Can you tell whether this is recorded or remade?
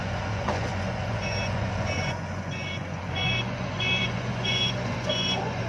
remade